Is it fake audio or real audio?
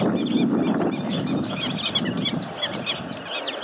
real